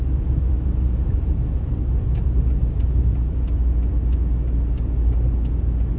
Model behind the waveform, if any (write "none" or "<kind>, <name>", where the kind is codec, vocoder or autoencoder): none